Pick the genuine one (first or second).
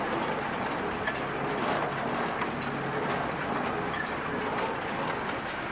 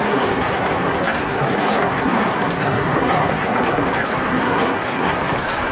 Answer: first